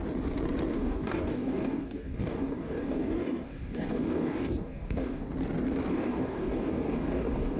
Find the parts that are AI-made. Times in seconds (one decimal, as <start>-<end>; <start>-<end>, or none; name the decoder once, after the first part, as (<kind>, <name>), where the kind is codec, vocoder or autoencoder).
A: 0.7-5.3 (codec, DAC); 5.9-7.6